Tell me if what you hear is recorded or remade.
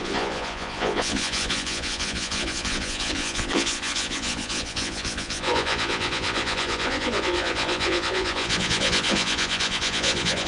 remade